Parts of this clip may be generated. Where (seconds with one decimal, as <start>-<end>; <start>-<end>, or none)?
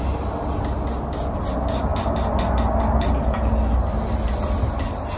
none